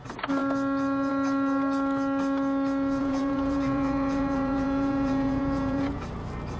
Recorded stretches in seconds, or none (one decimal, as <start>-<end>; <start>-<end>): 0.0-3.0; 6.0-6.6